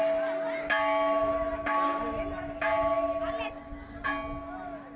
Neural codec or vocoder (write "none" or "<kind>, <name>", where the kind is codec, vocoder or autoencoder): none